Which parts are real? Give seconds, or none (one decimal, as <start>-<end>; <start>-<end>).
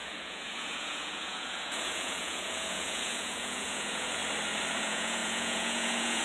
4.2-4.8